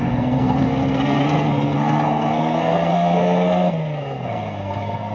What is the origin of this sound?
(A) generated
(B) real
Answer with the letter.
A